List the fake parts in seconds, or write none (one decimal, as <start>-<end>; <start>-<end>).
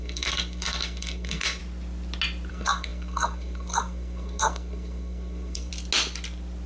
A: 0.0-1.6; 2.5-5.7